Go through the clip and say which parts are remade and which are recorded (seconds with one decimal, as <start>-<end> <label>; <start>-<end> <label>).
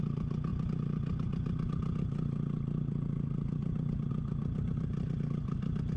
0.0-6.0 recorded